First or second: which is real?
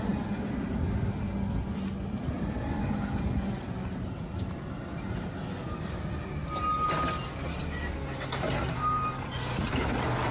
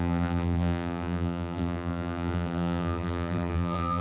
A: first